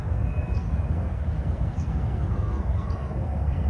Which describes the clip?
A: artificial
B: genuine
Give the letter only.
A